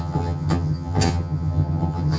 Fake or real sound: fake